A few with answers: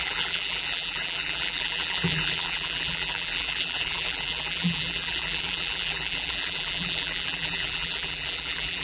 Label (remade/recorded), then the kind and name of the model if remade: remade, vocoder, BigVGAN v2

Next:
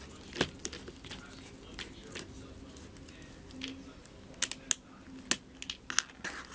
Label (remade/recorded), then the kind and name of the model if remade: recorded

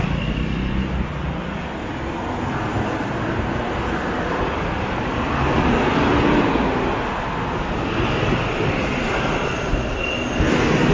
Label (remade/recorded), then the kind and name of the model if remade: recorded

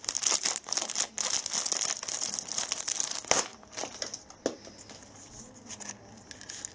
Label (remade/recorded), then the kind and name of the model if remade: recorded